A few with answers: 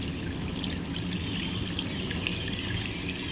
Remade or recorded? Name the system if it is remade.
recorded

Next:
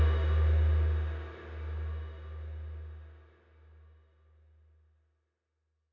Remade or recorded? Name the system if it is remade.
recorded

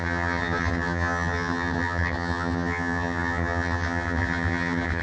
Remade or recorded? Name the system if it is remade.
remade, vocoder, HiFi-GAN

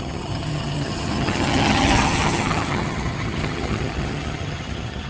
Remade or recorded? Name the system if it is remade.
remade, vocoder, HiFi-GAN